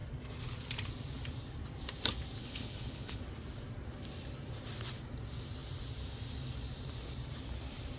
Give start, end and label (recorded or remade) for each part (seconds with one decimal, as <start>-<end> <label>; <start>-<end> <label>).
0.0-2.4 recorded; 2.4-3.2 remade; 3.2-8.0 recorded

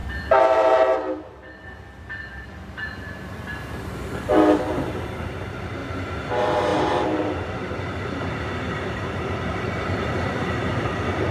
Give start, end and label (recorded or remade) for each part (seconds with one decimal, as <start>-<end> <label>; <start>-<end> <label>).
0.0-3.7 recorded; 3.7-5.8 remade; 5.8-6.3 recorded; 6.3-11.3 remade